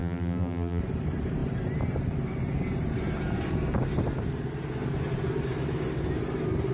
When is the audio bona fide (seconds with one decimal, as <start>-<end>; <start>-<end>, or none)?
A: 0.8-6.7